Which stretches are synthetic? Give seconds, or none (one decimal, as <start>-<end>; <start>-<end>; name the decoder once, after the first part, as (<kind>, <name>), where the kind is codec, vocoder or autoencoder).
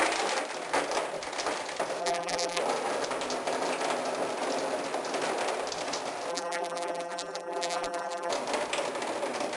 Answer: 2.0-2.6 (vocoder, BigVGAN v2); 6.3-8.3